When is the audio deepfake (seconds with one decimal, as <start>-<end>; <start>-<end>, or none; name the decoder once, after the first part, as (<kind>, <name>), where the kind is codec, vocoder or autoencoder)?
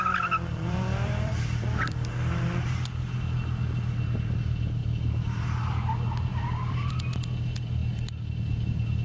0.5-1.3 (vocoder, BigVGAN v2); 6.3-6.9